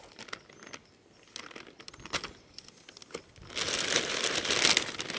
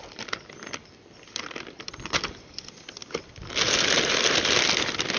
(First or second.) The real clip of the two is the first